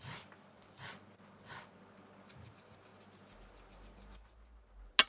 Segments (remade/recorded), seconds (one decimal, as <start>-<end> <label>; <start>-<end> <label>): 0.0-5.1 recorded